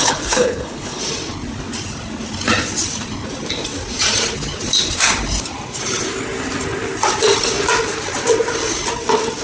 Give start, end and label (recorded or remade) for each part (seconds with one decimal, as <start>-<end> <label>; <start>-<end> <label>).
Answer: 0.0-1.0 remade; 1.0-9.4 recorded